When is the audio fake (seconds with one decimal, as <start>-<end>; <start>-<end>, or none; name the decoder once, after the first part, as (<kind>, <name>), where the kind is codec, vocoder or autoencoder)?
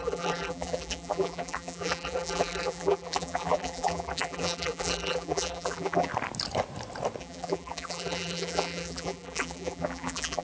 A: 0.0-6.1 (vocoder, BigVGAN v2); 7.2-10.4